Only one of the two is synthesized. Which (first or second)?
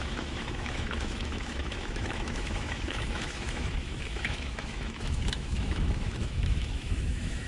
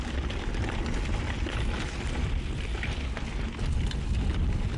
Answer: first